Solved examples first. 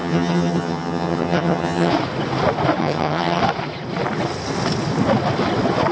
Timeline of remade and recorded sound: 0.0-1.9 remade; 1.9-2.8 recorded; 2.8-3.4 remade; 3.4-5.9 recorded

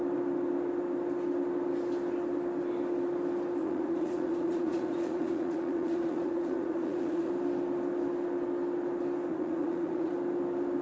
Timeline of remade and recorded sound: 0.0-3.6 recorded; 3.6-7.3 remade; 7.3-9.3 recorded; 9.3-10.1 remade; 10.1-10.8 recorded

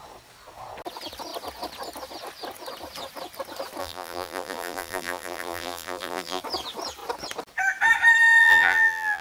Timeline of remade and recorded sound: 0.0-3.8 recorded; 3.8-6.4 remade; 6.4-8.4 recorded; 8.4-9.2 remade

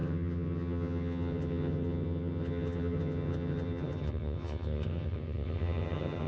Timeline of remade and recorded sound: 0.0-6.3 remade

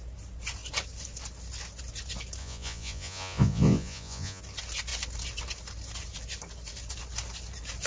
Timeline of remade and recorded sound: 0.0-2.4 recorded; 2.4-4.4 remade; 4.4-7.9 recorded

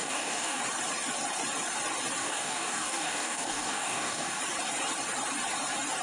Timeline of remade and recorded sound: 0.0-0.6 remade; 0.6-2.2 recorded; 2.2-4.4 remade; 4.4-6.0 recorded